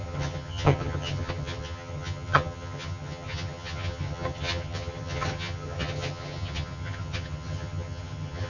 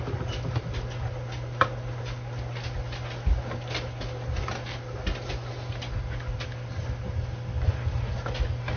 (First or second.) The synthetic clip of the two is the first